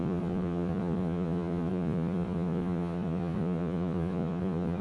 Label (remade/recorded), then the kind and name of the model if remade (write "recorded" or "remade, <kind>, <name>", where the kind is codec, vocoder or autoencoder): remade, vocoder, Vocos